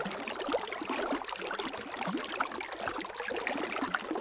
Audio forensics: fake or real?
real